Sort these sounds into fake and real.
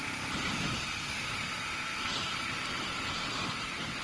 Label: real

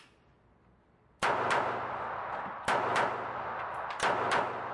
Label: real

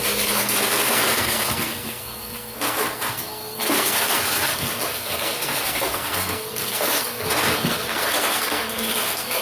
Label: fake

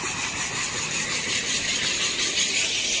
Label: real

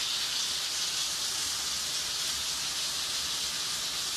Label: real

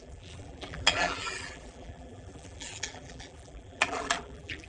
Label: fake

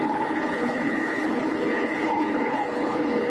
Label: fake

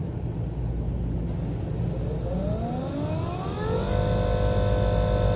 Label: real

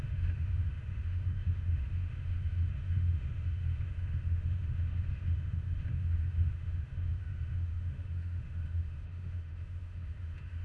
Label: fake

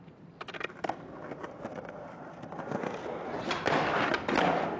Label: real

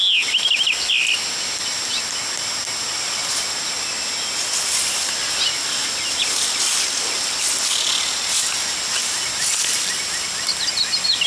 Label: real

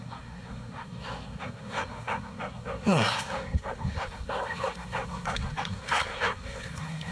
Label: fake